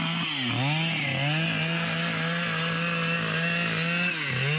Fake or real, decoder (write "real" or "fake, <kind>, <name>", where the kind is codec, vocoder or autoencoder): real